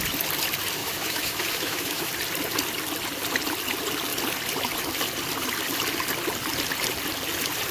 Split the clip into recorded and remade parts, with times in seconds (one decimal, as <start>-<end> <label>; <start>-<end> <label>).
0.0-0.8 recorded; 0.8-2.1 remade; 2.1-7.7 recorded